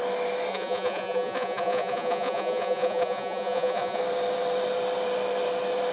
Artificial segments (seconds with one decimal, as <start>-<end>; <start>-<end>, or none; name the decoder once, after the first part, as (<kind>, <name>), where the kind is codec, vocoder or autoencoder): 0.5-4.0 (vocoder, Vocos)